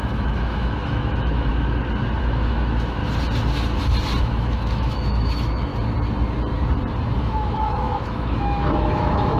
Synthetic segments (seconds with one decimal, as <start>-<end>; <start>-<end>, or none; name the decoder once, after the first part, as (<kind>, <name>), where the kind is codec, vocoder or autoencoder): 0.0-1.5 (autoencoder, DAC-VAE); 2.2-3.0; 4.2-5.7; 7.2-9.4